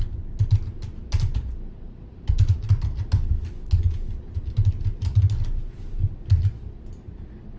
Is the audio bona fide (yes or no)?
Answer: yes